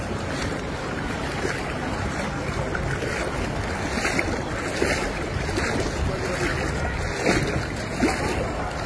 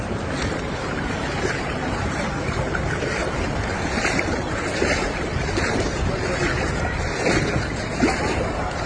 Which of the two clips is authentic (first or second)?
first